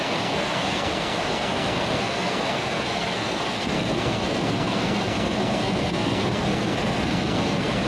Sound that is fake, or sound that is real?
fake